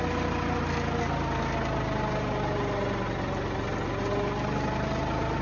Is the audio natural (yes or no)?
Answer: yes